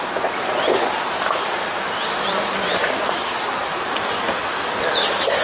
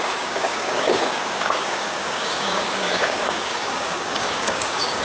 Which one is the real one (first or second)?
first